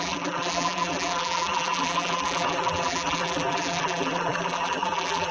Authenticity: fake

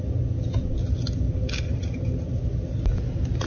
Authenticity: real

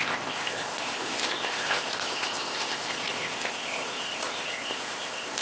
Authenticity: fake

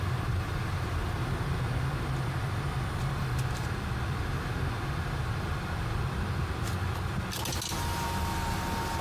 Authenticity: real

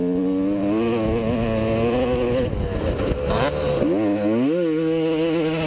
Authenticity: real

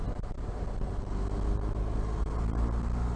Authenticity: real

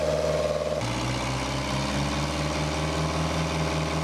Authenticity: real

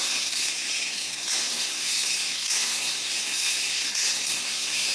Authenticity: fake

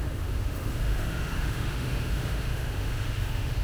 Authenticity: fake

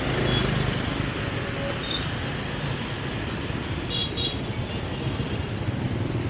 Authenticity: real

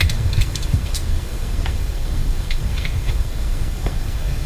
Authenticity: fake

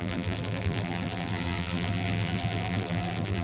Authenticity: fake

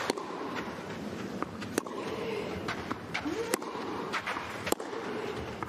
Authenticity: fake